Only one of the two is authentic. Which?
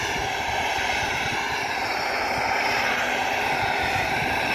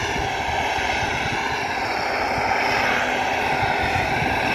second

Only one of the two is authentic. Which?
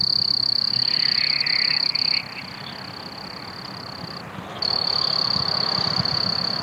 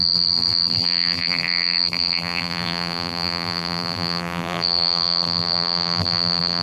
first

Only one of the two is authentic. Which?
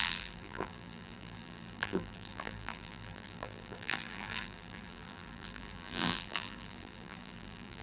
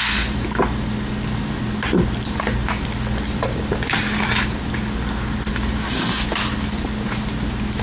second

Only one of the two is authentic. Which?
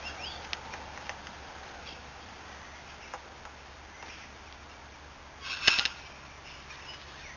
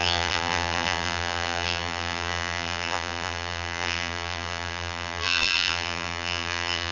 first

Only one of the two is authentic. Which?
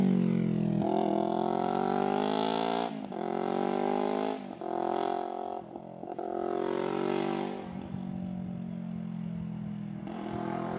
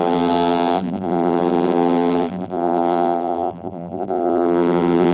first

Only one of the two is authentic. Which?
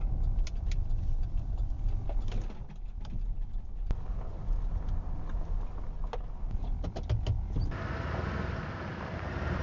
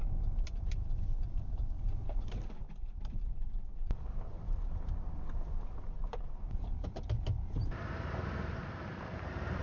first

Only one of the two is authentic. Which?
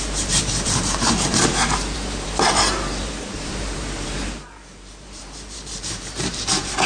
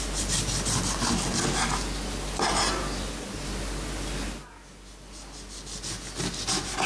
second